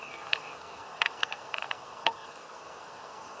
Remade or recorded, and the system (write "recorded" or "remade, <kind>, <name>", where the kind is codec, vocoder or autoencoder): remade, codec, SNAC